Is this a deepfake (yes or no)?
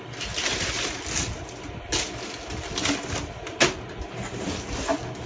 no